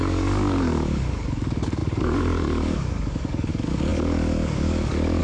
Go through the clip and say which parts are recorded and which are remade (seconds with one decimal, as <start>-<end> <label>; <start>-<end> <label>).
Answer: 0.0-5.2 remade